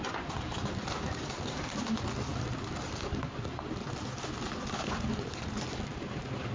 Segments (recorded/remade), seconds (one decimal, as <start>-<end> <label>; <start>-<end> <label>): 0.0-6.5 recorded